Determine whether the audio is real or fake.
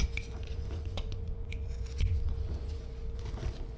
fake